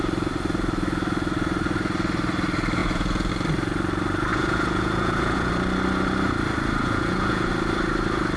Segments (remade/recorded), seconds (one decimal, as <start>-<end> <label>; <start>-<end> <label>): 0.0-2.8 recorded; 2.8-3.3 remade; 3.3-4.3 recorded; 4.3-5.5 remade; 5.5-6.8 recorded; 6.8-7.5 remade; 7.5-8.4 recorded